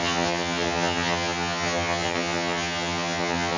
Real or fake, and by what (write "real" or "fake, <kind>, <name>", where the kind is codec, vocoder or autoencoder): fake, vocoder, HiFi-GAN